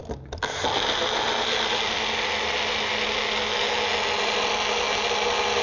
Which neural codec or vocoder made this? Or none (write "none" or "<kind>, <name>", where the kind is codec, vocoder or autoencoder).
none